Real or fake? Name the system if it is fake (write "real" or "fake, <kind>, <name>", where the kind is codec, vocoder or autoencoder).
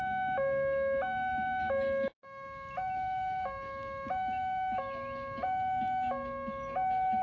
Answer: real